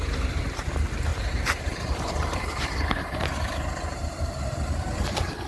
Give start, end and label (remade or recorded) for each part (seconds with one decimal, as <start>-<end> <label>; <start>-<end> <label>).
0.0-1.1 recorded; 1.1-4.4 remade; 4.4-5.5 recorded